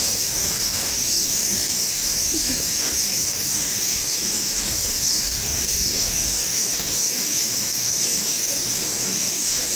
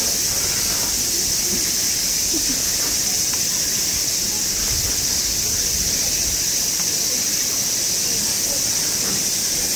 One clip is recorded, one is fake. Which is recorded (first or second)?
second